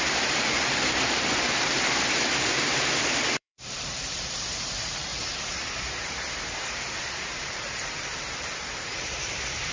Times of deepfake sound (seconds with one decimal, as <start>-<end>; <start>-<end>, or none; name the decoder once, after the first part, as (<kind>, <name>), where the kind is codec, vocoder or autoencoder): 0.0-5.1 (vocoder, BigVGAN v2); 7.1-9.7